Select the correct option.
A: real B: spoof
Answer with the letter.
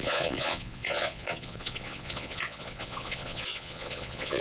B